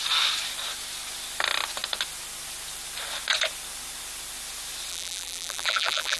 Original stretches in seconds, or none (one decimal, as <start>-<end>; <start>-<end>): 0.0-4.9